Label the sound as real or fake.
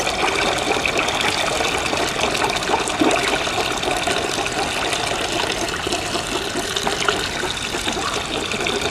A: real